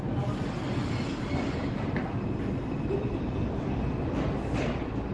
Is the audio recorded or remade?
recorded